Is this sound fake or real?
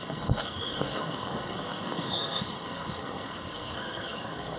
fake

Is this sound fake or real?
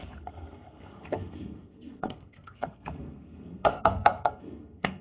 fake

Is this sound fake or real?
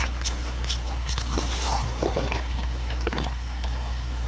fake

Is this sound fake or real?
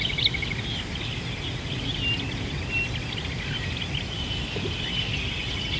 real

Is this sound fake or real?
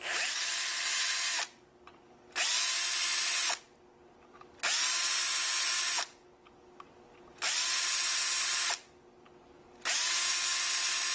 real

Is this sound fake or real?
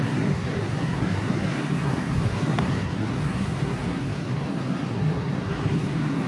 fake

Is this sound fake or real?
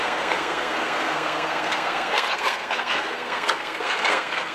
fake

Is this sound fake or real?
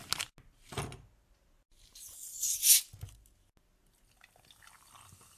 real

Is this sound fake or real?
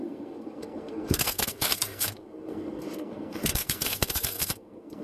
fake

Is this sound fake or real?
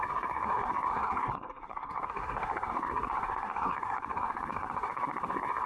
fake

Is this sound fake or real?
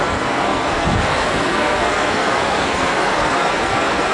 fake